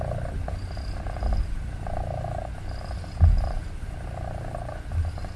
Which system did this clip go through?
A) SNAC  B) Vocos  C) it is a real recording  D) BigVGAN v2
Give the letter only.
C